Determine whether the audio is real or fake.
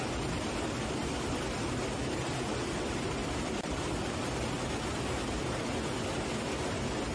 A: real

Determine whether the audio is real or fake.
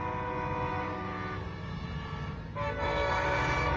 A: real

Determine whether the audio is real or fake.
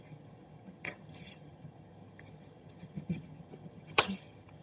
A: fake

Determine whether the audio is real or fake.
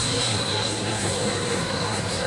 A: fake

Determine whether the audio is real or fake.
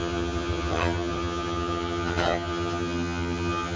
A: fake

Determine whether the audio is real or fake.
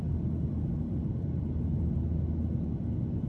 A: real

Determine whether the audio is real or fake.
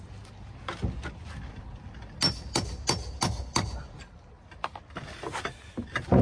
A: real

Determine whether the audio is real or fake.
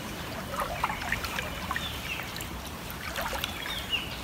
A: fake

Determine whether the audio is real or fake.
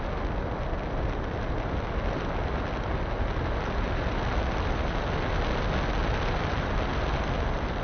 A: real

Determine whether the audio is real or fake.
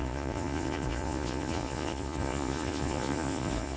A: fake